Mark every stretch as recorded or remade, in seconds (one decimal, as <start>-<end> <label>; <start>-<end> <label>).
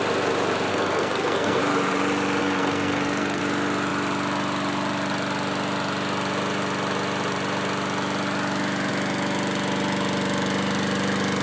0.0-0.7 recorded; 0.7-1.6 remade; 1.6-2.4 recorded; 2.4-3.4 remade; 3.4-11.4 recorded